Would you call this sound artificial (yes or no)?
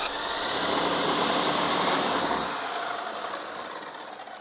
no